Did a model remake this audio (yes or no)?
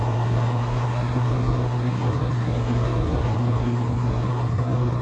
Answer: yes